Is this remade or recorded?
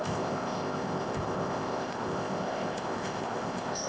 remade